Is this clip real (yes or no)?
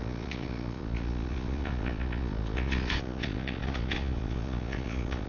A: no